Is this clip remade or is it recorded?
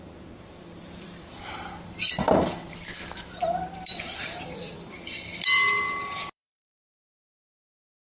remade